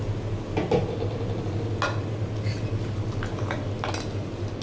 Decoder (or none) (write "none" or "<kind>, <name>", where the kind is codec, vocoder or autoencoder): none